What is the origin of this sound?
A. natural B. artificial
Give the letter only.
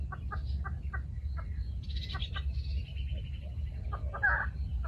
A